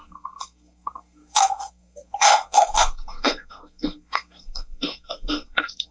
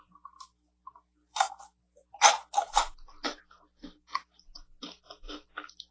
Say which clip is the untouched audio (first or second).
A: second